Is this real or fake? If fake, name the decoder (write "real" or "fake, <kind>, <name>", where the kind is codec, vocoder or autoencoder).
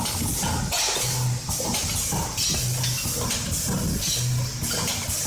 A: real